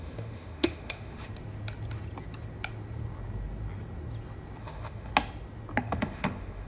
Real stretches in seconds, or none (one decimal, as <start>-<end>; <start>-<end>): 1.3-4.6; 5.1-5.8